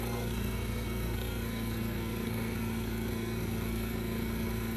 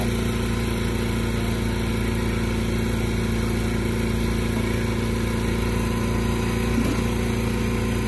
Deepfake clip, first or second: first